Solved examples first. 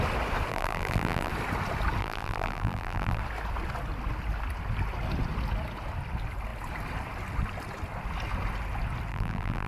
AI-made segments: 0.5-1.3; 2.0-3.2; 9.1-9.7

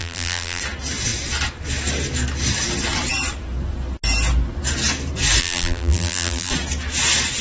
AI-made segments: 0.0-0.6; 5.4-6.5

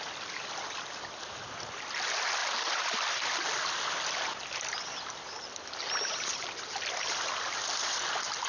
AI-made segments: none

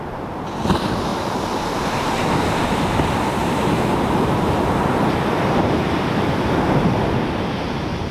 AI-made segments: 1.1-2.1; 3.4-6.3

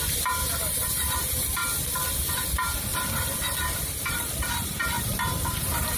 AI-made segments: 0.0-1.6; 2.4-2.9; 4.1-6.0

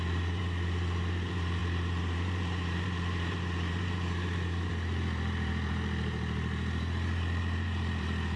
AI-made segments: 0.0-8.4

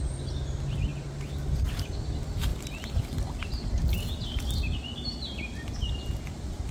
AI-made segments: none